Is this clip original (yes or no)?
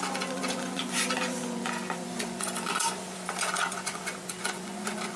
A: no